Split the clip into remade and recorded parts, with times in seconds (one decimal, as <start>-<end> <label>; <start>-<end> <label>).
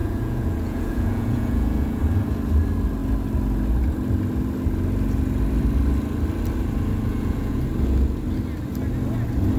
0.0-2.0 remade; 2.0-7.1 recorded; 7.1-7.6 remade; 7.6-9.6 recorded